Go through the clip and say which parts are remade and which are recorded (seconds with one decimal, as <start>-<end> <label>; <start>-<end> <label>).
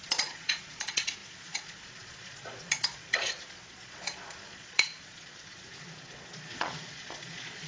0.0-7.7 remade